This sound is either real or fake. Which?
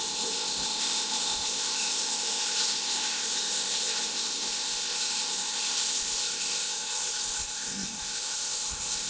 fake